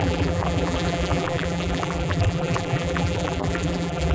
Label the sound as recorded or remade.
remade